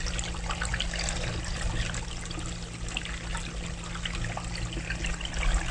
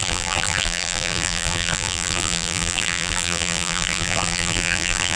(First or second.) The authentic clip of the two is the first